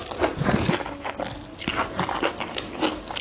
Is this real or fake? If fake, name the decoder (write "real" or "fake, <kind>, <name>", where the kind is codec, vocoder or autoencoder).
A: real